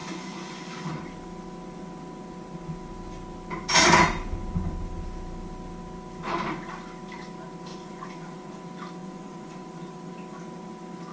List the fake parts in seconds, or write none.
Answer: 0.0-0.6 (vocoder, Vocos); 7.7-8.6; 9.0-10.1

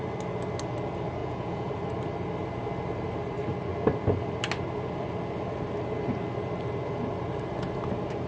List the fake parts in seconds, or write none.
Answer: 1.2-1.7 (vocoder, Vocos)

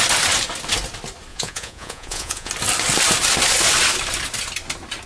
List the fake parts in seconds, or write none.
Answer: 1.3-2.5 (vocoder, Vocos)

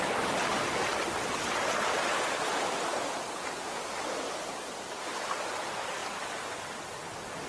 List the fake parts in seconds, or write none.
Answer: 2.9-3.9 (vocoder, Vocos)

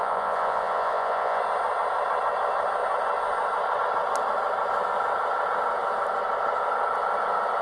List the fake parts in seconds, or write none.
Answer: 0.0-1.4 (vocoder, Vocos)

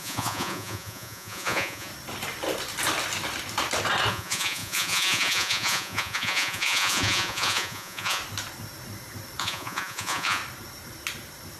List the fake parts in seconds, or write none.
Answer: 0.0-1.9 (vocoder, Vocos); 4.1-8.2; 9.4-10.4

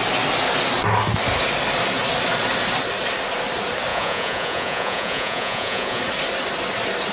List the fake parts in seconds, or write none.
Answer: 3.9-6.0 (vocoder, Vocos)